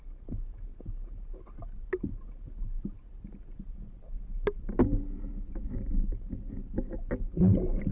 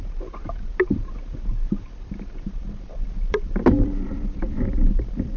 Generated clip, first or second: second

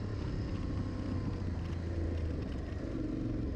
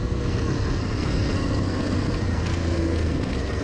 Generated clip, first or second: second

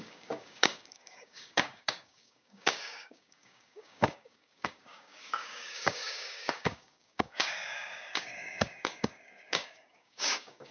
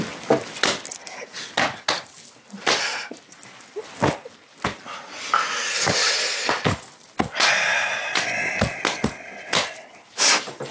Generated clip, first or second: first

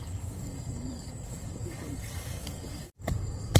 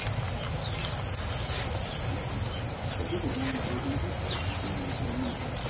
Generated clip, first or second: first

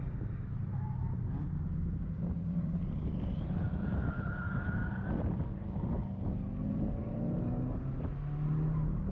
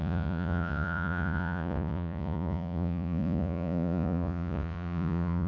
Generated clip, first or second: second